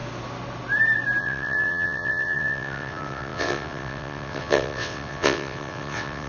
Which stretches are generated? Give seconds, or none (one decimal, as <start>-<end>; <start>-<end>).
1.2-6.3